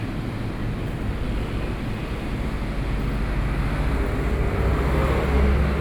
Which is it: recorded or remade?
recorded